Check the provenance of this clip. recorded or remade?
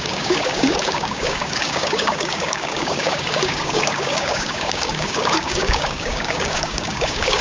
remade